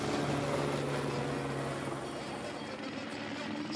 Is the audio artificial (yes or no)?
no